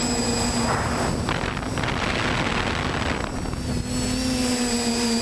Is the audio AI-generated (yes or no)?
no